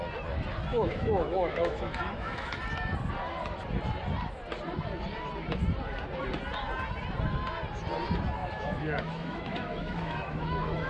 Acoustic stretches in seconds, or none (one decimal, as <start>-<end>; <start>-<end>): 0.0-0.7; 2.6-8.4